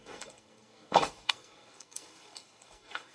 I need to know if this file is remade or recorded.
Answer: remade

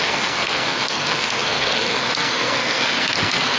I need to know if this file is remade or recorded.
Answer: remade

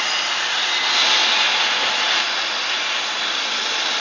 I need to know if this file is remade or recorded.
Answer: recorded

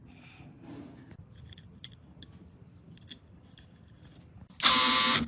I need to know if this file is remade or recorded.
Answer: recorded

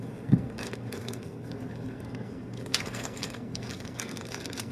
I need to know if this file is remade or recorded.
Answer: remade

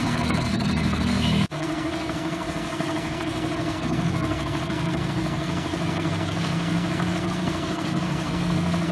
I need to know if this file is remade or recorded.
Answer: remade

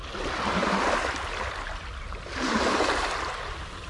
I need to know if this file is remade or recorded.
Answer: recorded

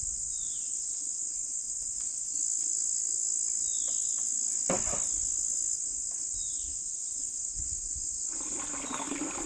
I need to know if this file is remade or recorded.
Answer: recorded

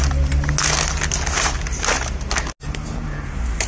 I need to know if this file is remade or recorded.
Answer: recorded